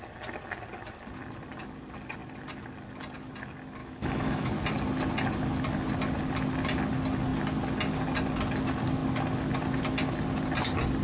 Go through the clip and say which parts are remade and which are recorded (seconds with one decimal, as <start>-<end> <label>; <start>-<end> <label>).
0.0-3.8 recorded; 3.8-4.5 remade; 4.5-11.0 recorded